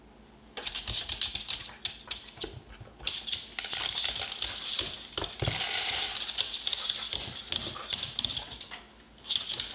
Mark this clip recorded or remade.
recorded